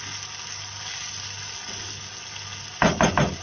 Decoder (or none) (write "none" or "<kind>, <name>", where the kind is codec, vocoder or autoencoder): none